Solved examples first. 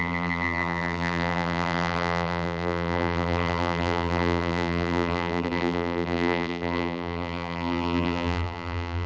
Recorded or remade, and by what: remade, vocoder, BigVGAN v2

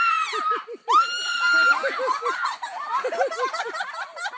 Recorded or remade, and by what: recorded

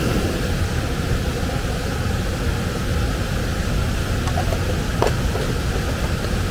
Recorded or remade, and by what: recorded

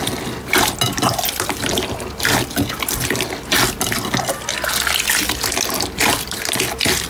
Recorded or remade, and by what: recorded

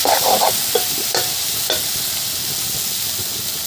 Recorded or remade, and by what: recorded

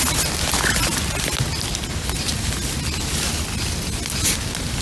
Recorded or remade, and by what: recorded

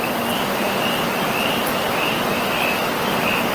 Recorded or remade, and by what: recorded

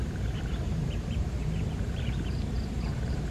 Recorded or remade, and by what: remade, vocoder, BigVGAN v2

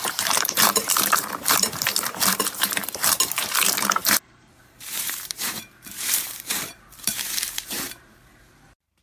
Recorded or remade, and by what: remade, vocoder, BigVGAN v2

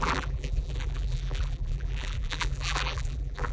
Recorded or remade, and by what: remade, vocoder, BigVGAN v2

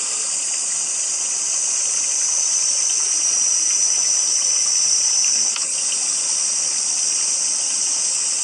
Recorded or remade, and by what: recorded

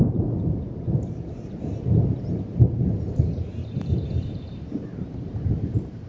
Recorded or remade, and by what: remade, vocoder, BigVGAN v2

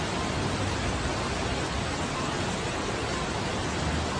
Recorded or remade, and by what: recorded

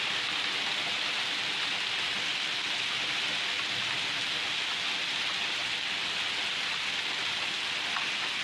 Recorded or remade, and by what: recorded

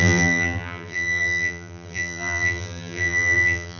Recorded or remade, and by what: remade, vocoder, BigVGAN v2